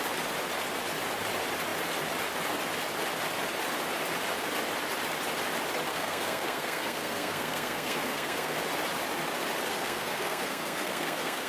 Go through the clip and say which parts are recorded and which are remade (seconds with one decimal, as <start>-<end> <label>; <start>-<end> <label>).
0.0-5.9 recorded; 5.9-8.6 remade; 8.6-9.7 recorded; 9.7-11.5 remade